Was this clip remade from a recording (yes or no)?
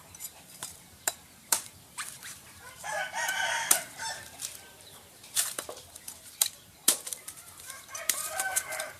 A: yes